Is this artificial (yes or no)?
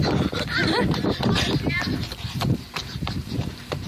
yes